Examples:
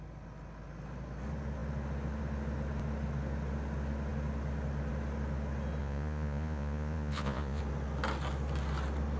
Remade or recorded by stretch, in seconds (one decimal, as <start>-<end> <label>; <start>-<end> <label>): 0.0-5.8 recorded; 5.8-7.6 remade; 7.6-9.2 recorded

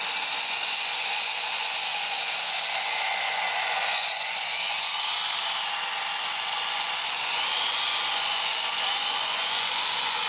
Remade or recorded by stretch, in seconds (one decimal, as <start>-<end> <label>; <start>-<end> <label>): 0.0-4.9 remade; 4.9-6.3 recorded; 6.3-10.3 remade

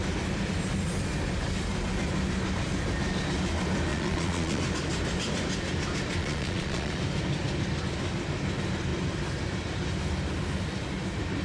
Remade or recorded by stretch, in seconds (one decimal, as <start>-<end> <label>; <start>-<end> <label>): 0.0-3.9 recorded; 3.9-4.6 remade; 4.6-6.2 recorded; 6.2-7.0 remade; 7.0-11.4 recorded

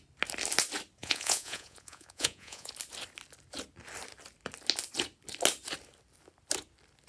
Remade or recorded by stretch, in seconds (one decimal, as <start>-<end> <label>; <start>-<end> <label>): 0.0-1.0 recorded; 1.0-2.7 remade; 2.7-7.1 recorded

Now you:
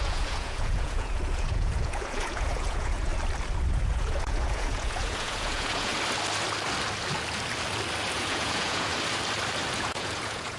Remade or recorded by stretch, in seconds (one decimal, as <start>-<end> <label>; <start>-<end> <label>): 0.0-3.1 remade; 3.1-3.7 recorded; 3.7-5.9 remade; 5.9-8.1 recorded; 8.1-8.9 remade; 8.9-9.7 recorded; 9.7-10.6 remade